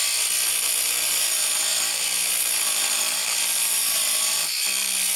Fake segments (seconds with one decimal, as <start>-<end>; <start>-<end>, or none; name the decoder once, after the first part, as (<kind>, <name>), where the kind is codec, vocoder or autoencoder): 0.0-0.5 (vocoder, BigVGAN v2); 1.7-3.4